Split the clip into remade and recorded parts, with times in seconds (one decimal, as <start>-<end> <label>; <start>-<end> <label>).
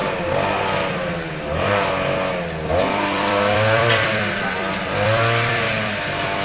0.0-2.7 recorded; 2.7-6.4 remade